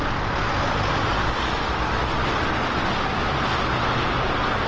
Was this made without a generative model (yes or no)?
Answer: yes